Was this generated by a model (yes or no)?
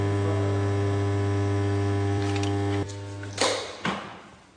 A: no